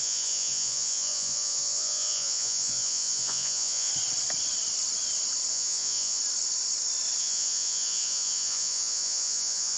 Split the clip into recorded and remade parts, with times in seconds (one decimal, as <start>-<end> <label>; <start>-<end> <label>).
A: 0.0-3.9 remade; 3.9-5.5 recorded; 5.5-6.2 remade; 6.2-7.2 recorded; 7.2-9.8 remade

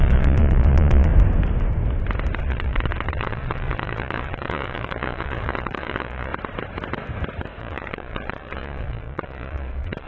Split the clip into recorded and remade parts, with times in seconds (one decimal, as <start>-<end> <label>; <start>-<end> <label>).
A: 0.0-1.1 remade; 1.1-2.4 recorded; 2.4-6.3 remade; 6.3-7.6 recorded; 7.6-10.1 remade

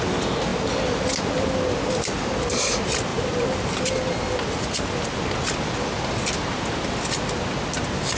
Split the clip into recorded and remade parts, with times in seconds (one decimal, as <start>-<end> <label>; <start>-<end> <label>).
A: 0.0-3.1 recorded; 3.1-3.9 remade; 3.9-8.2 recorded

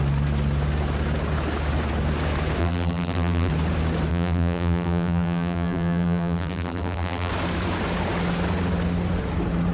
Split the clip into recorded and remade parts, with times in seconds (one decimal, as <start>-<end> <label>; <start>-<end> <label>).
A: 0.0-2.6 recorded; 2.6-3.5 remade; 3.5-4.1 recorded; 4.1-7.3 remade; 7.3-9.7 recorded